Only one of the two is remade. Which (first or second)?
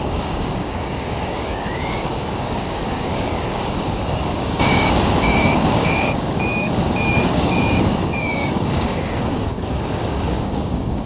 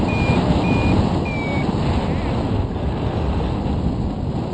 first